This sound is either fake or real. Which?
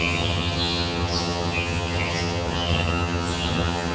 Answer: fake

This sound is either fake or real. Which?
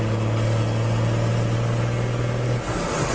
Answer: real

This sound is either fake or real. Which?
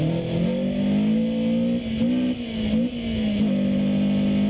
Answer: real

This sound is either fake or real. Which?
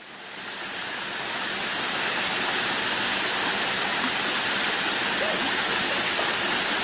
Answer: real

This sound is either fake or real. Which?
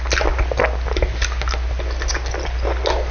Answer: real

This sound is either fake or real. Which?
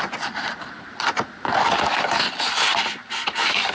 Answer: real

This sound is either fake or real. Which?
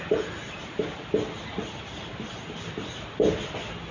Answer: real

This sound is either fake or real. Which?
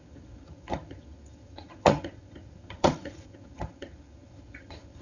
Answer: fake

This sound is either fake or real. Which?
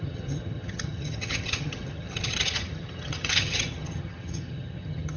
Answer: fake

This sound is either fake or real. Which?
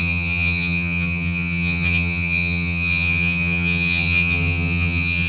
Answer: fake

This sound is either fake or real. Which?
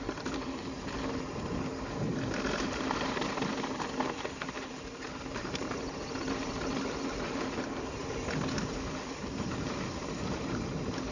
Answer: real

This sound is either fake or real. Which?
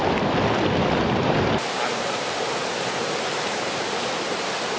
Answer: real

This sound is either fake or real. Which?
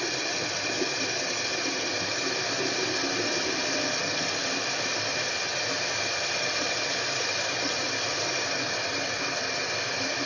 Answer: real